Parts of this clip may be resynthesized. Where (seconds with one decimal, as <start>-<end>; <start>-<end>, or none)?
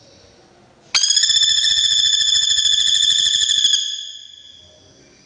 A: 1.5-3.6